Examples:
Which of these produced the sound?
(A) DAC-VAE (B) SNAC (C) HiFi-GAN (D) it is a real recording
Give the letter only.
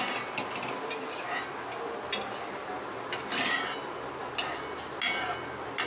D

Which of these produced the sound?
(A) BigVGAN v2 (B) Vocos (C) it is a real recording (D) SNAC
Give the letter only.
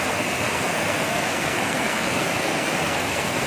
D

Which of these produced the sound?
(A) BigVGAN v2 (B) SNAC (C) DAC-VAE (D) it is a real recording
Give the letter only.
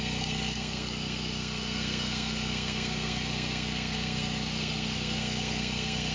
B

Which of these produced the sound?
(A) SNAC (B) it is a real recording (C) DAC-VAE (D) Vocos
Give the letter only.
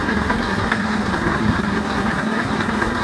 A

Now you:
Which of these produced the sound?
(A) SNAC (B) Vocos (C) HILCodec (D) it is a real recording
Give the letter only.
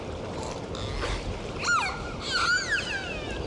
D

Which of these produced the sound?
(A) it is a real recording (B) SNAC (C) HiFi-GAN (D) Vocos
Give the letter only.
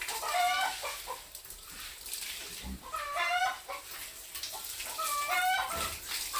A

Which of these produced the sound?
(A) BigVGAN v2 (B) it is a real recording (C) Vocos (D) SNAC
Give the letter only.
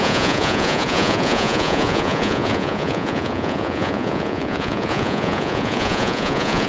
C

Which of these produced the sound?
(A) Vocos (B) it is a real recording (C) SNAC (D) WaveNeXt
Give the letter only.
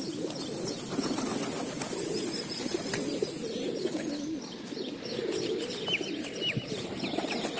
B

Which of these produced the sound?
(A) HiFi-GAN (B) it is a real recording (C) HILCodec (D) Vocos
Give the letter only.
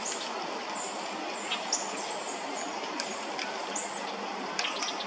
B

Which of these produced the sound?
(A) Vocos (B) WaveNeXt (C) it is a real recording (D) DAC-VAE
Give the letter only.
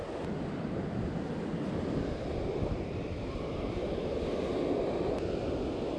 C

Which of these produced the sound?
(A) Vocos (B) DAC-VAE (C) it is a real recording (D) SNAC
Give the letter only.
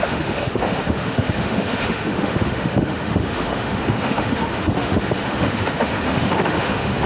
B